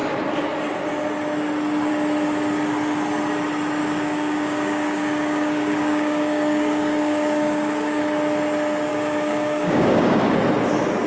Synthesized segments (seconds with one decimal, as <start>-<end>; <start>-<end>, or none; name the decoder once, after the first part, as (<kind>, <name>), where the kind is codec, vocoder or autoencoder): 3.8-8.0 (codec, DAC); 8.9-10.3